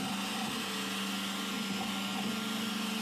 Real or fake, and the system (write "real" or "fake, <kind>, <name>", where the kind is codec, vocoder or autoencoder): real